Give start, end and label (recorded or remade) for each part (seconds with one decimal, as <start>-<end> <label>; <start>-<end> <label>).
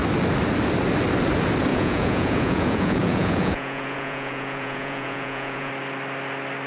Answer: 0.0-1.7 recorded; 1.7-5.7 remade; 5.7-6.7 recorded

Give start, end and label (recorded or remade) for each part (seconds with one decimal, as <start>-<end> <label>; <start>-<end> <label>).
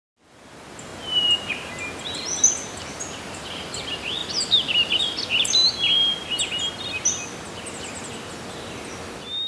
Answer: 0.0-9.5 recorded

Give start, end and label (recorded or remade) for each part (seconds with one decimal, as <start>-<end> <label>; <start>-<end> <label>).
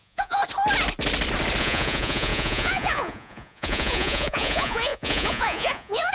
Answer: 0.0-0.4 remade; 0.4-1.6 recorded; 1.6-6.1 remade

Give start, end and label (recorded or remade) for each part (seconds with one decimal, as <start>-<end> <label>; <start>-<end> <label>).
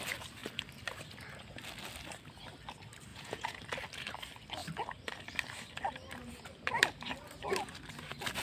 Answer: 0.0-3.1 recorded; 3.1-3.6 remade; 3.6-8.4 recorded